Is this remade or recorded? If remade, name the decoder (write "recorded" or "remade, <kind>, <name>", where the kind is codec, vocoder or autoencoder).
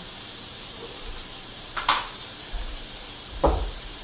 remade, vocoder, BigVGAN v2